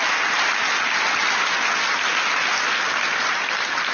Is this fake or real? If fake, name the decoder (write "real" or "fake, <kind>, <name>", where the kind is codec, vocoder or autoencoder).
real